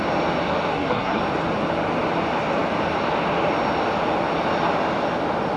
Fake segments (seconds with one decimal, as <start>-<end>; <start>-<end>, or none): 0.7-1.2